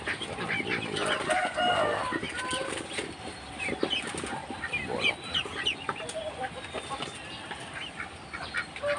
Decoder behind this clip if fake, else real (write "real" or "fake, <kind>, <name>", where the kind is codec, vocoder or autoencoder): real